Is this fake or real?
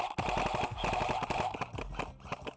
real